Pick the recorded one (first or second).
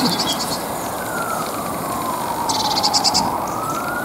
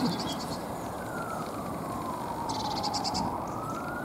first